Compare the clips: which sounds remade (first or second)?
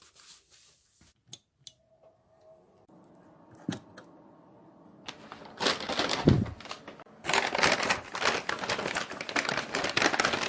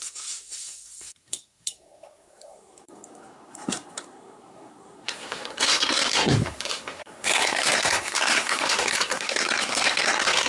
second